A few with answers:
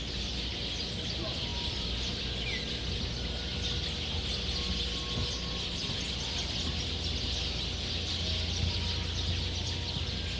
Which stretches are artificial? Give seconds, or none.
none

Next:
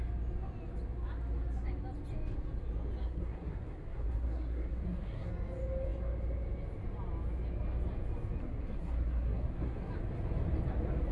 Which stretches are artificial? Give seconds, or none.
3.0-5.3 (codec, SNAC); 8.4-9.9

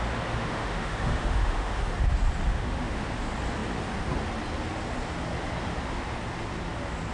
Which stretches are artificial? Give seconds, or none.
0.4-1.8 (autoencoder, DAC-VAE); 2.5-3.2

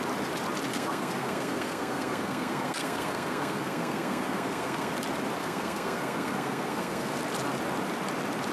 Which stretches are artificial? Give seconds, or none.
0.7-4.9 (codec, SNAC); 5.4-7.1